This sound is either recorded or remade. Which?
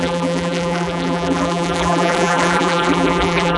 remade